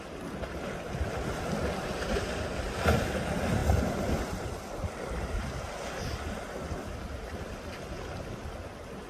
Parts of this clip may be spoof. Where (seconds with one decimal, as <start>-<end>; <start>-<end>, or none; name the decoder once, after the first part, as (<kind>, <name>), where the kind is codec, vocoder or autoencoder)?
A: none